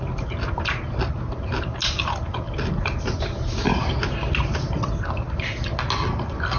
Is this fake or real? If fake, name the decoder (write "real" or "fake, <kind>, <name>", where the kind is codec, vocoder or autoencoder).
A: real